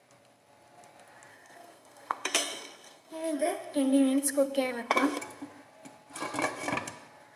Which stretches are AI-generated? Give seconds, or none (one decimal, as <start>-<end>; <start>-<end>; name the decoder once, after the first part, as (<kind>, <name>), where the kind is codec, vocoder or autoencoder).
1.3-5.2 (codec, SNAC)